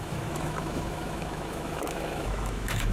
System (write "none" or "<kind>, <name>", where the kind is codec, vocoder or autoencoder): autoencoder, DAC-VAE